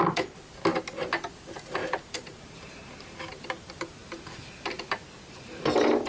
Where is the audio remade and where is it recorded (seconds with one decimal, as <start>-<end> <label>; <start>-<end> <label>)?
0.0-1.8 recorded; 1.8-2.9 remade; 2.9-6.1 recorded